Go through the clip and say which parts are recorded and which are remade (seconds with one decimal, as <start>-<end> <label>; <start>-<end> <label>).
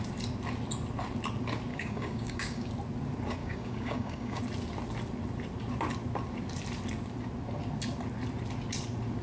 0.0-1.7 recorded; 1.7-2.7 remade; 2.7-3.4 recorded; 3.4-4.4 remade; 4.4-9.2 recorded